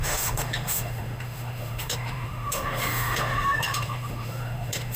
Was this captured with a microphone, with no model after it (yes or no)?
no